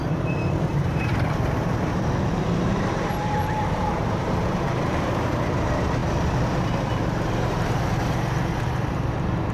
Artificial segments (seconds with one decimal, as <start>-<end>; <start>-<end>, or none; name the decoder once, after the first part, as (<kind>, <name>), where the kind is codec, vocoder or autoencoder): 0.0-9.5 (vocoder, BigVGAN v2)